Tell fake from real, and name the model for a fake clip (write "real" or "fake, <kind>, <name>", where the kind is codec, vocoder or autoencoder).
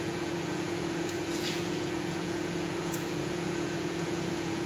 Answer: fake, vocoder, Vocos